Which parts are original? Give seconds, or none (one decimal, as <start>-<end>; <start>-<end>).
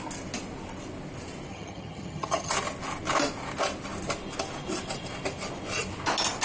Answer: 0.0-1.5; 2.5-6.4